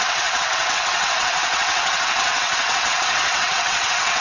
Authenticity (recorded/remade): remade